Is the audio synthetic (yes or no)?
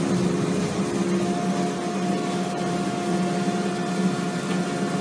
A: no